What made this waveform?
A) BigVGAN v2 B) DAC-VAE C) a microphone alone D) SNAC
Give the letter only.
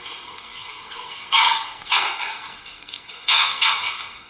D